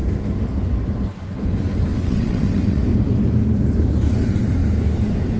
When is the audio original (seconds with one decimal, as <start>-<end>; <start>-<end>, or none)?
0.0-1.9; 2.8-5.4

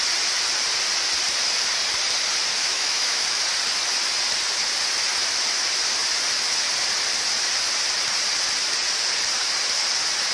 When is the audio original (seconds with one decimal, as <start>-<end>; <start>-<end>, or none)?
0.0-2.6; 3.4-10.3

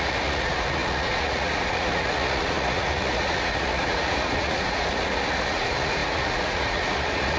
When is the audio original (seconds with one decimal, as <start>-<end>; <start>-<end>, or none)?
none

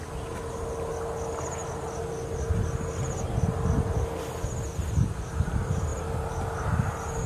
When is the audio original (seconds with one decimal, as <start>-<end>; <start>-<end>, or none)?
0.0-7.3

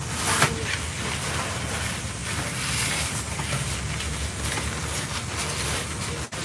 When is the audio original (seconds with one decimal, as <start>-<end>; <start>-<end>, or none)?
0.0-6.4

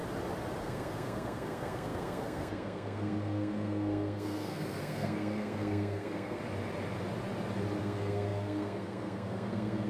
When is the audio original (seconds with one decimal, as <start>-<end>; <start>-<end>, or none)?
0.0-0.6; 6.4-7.8